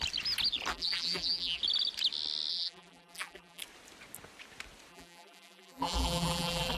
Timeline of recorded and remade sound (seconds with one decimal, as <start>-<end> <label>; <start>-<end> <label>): 0.0-0.7 recorded; 0.7-1.6 remade; 1.6-2.5 recorded; 2.5-3.6 remade; 3.6-4.9 recorded; 4.9-6.8 remade